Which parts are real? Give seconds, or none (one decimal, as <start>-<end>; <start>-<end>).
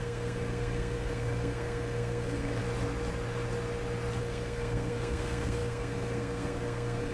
2.6-4.2